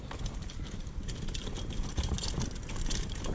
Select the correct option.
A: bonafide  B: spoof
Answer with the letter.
A